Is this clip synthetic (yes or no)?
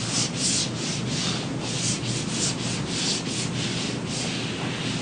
no